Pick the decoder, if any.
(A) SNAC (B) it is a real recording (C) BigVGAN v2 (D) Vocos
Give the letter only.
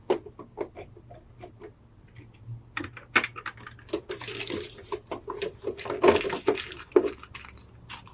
B